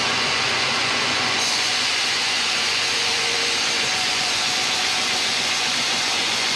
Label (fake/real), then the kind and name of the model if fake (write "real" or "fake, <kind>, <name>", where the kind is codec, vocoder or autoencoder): fake, vocoder, Vocos